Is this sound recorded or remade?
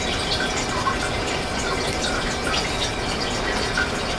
recorded